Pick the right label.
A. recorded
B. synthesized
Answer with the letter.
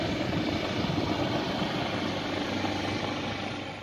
A